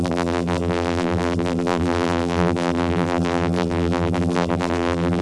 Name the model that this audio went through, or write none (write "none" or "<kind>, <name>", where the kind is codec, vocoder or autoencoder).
vocoder, BigVGAN v2